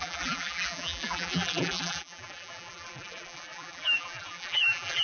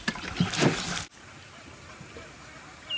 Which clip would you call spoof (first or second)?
first